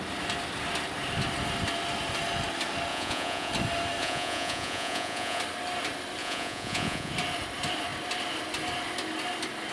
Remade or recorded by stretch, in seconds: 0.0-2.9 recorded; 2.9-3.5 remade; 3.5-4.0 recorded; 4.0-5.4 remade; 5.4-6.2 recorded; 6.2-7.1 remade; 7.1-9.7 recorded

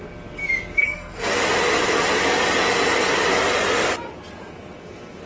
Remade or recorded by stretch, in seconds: 0.0-0.8 recorded; 0.8-1.4 remade; 1.4-5.3 recorded

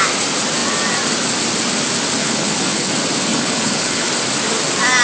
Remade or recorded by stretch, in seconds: 0.0-2.2 recorded; 2.2-2.9 remade; 2.9-3.3 recorded; 3.3-4.1 remade; 4.1-5.0 recorded